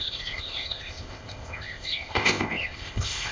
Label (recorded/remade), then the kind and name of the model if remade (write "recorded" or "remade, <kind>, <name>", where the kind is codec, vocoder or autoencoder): remade, codec, ZipCodec